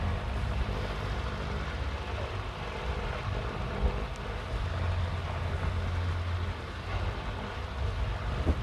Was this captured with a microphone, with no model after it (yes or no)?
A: yes